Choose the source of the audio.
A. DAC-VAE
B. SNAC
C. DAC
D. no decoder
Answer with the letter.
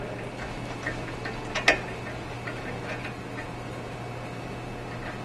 D